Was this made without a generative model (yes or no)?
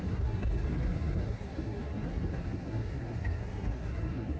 no